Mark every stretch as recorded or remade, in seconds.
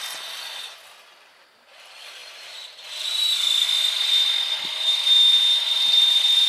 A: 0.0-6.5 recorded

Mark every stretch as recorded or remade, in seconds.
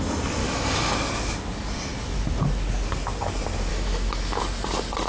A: 0.0-0.4 recorded; 0.4-0.9 remade; 0.9-3.7 recorded; 3.7-4.4 remade; 4.4-5.1 recorded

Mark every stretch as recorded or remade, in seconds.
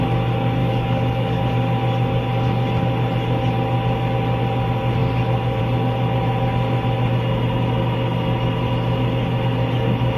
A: 0.0-0.6 recorded; 0.6-1.4 remade; 1.4-10.2 recorded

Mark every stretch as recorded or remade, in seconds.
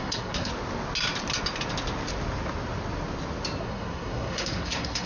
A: 0.0-0.5 remade; 0.5-3.6 recorded; 3.6-5.1 remade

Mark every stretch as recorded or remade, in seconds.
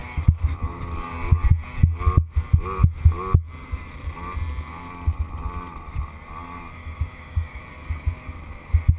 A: 0.0-0.8 remade; 0.8-6.8 recorded; 6.8-7.6 remade; 7.6-9.0 recorded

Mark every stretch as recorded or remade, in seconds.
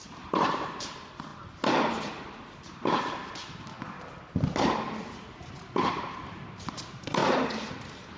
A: 0.0-1.3 remade; 1.3-5.4 recorded; 5.4-7.2 remade; 7.2-7.7 recorded; 7.7-8.2 remade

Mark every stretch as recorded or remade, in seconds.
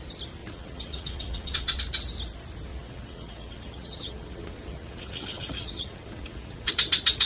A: 0.0-0.4 recorded; 0.4-1.8 remade; 1.8-2.7 recorded; 2.7-6.7 remade; 6.7-7.2 recorded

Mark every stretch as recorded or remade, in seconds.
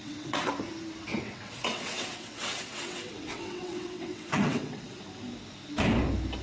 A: 0.0-0.5 remade; 0.5-1.1 recorded; 1.1-4.9 remade; 4.9-6.4 recorded